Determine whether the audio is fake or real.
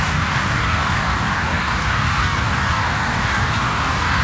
fake